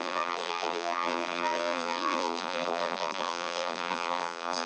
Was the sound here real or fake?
fake